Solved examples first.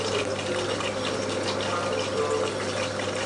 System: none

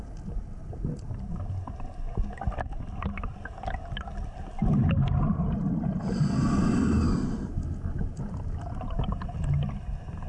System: none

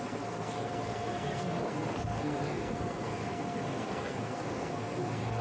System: codec, SNAC